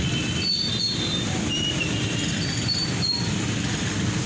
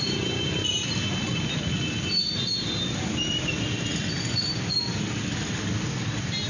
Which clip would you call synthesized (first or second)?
first